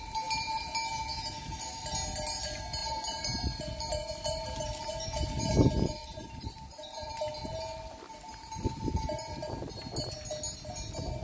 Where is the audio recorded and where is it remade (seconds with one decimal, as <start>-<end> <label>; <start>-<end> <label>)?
0.0-2.8 recorded; 2.8-5.4 remade; 5.4-6.0 recorded; 6.0-7.1 remade; 7.1-11.2 recorded